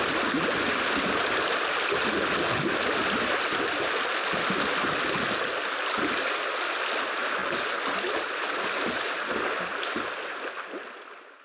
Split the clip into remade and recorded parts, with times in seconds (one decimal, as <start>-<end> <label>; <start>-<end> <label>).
0.0-11.4 recorded